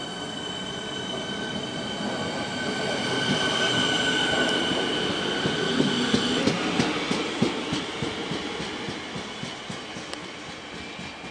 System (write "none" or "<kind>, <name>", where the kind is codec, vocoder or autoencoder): none